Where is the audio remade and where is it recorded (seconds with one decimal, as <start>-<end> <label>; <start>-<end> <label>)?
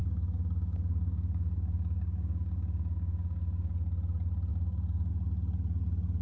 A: 0.0-3.7 remade; 3.7-4.5 recorded; 4.5-5.1 remade; 5.1-6.2 recorded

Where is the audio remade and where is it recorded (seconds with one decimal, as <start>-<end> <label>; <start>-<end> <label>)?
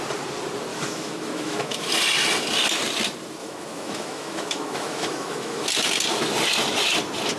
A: 0.0-0.7 recorded; 0.7-1.9 remade; 1.9-3.4 recorded; 3.4-5.7 remade; 5.7-7.4 recorded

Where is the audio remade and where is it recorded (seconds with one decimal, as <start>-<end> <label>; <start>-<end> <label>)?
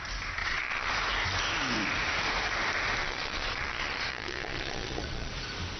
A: 0.0-0.4 recorded; 0.4-0.9 remade; 0.9-3.0 recorded; 3.0-5.3 remade; 5.3-5.8 recorded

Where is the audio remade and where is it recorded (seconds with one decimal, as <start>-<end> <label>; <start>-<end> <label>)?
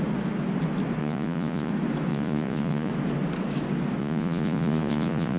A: 0.0-1.0 recorded; 1.0-1.7 remade; 1.7-2.1 recorded; 2.1-2.9 remade; 2.9-4.0 recorded; 4.0-5.4 remade